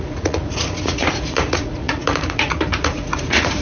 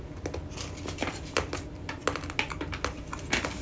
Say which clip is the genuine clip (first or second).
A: second